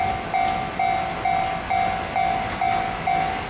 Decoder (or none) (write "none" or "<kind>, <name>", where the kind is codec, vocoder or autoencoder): none